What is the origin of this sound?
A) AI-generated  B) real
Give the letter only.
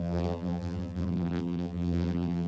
A